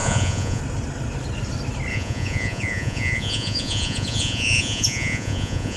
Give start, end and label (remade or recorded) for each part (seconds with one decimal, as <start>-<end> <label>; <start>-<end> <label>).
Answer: 0.0-0.6 remade; 0.6-1.9 recorded; 1.9-5.8 remade